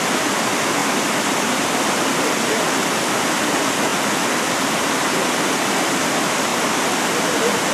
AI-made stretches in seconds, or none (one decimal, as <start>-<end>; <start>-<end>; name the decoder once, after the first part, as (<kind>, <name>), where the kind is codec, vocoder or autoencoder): 0.8-2.8 (vocoder, BigVGAN v2); 3.9-4.5; 6.5-7.1